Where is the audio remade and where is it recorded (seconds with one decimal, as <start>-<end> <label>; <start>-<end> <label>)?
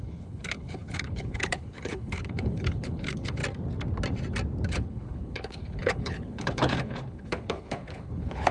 0.0-3.4 remade; 3.4-4.7 recorded; 4.7-8.5 remade